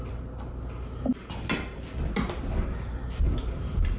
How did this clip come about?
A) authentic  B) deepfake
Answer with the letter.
A